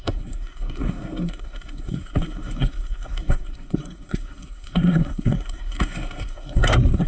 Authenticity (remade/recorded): remade